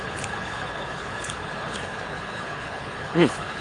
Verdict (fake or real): fake